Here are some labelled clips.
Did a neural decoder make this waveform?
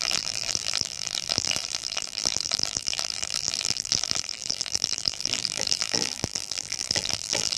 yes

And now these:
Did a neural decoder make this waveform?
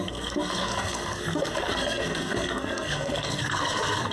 yes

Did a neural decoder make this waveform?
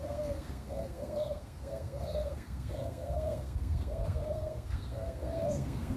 yes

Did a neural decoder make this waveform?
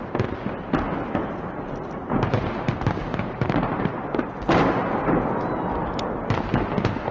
no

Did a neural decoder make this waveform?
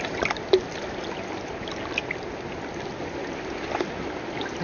no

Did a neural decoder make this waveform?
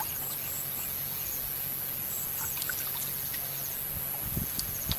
no